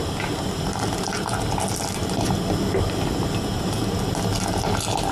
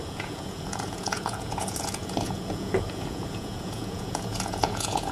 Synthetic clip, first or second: second